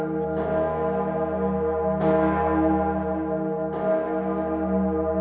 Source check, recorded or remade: recorded